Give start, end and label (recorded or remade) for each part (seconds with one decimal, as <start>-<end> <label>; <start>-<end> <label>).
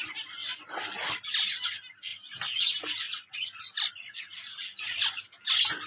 0.0-5.9 recorded